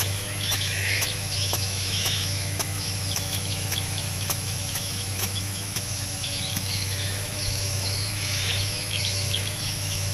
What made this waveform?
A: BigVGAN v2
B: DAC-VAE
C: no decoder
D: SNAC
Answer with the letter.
B